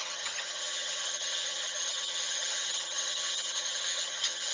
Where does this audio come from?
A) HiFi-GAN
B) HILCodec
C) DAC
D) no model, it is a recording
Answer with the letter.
A